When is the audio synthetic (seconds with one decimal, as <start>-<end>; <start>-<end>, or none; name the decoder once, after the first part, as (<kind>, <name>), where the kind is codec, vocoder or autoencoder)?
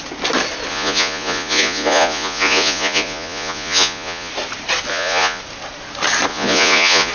0.7-4.3 (vocoder, Vocos); 4.9-5.4; 6.3-7.1